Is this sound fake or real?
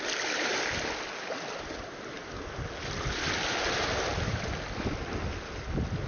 real